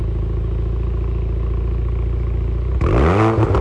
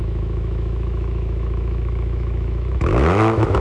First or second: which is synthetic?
second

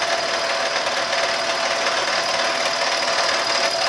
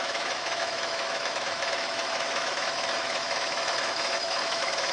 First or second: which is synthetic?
second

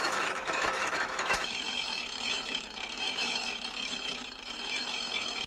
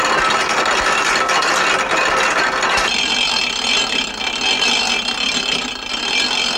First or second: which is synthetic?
first